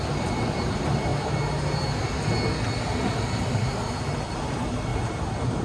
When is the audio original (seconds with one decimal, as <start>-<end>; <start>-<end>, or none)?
1.1-4.3; 4.9-5.6

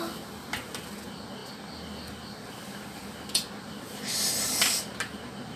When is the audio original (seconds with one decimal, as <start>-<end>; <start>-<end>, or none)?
0.0-5.6

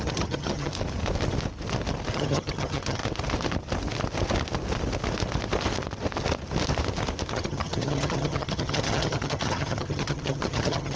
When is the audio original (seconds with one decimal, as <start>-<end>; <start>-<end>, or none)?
0.7-2.1; 3.0-7.3

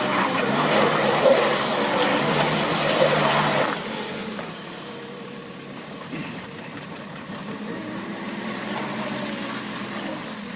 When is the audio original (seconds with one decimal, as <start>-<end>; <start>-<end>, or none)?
0.0-4.2; 9.1-10.6

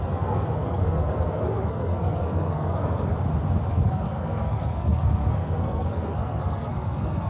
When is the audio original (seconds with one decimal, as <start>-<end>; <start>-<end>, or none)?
3.1-3.7